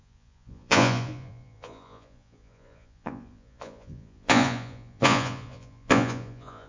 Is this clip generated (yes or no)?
yes